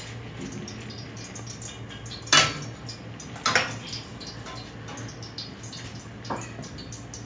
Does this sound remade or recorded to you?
recorded